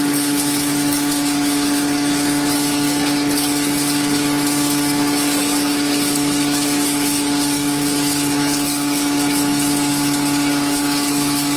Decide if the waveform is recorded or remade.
remade